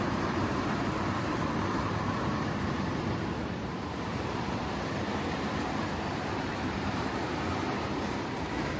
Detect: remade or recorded remade